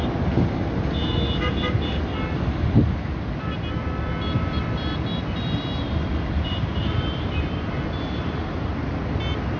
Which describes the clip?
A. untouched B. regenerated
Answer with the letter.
A